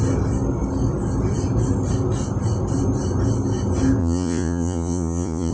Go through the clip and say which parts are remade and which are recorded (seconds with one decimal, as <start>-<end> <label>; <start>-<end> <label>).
0.0-4.0 recorded; 4.0-5.5 remade